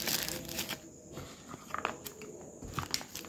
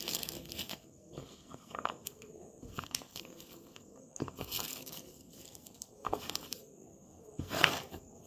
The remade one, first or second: second